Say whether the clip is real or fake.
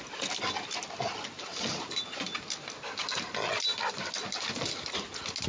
real